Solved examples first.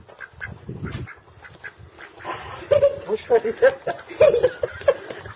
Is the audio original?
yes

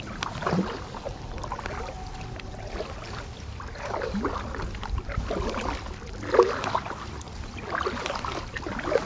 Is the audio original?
yes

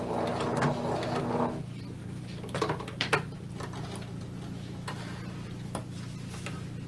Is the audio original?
yes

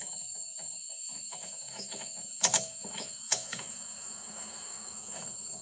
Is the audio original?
no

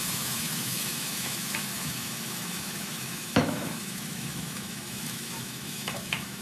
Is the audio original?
no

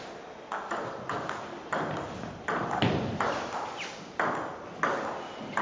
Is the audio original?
yes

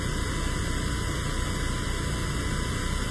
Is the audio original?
yes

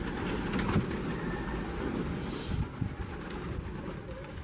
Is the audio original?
yes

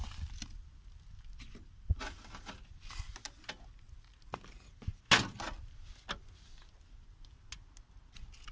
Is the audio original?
yes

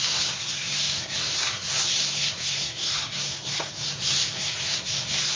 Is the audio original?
no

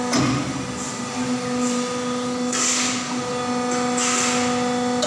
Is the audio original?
yes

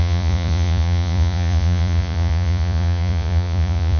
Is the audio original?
no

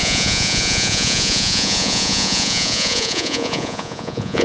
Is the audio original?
no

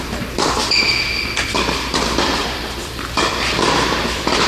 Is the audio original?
no